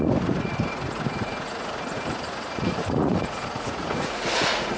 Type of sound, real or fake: fake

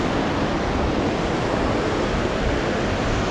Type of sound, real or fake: real